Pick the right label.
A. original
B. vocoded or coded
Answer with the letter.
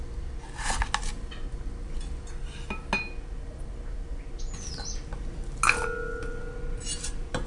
A